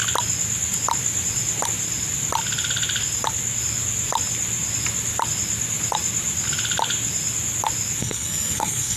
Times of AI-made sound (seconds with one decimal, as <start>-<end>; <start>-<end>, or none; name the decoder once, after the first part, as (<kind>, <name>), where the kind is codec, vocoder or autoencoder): 8.0-9.0 (codec, SNAC)